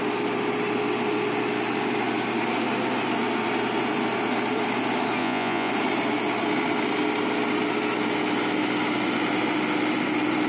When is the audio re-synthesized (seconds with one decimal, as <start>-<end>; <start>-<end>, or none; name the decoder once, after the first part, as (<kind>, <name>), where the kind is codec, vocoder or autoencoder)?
5.2-5.7 (vocoder, Vocos)